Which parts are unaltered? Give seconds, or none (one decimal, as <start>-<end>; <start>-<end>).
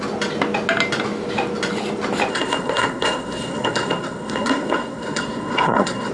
0.0-2.3